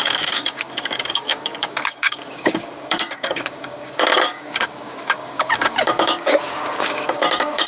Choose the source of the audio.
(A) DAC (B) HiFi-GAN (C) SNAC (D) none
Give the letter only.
A